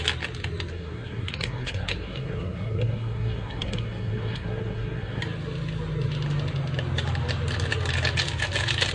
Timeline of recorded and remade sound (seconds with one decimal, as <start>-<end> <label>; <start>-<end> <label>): 0.0-0.7 recorded; 0.7-5.2 remade; 5.2-8.9 recorded